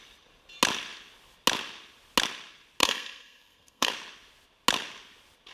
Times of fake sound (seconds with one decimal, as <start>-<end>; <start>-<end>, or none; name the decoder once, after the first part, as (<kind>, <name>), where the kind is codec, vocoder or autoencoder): 2.8-3.9 (codec, SNAC)